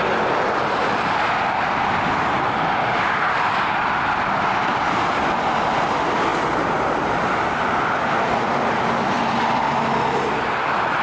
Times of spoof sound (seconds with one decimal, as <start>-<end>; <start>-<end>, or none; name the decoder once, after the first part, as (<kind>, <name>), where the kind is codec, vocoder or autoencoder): none